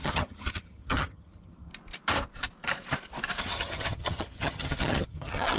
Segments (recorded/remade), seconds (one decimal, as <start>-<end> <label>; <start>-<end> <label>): 0.0-1.7 remade; 1.7-3.4 recorded; 3.4-5.6 remade